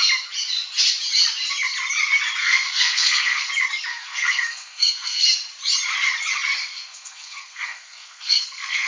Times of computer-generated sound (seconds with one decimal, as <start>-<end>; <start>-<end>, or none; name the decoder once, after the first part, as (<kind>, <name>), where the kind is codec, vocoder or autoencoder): 2.4-3.5 (codec, SNAC); 3.9-5.2; 6.6-8.9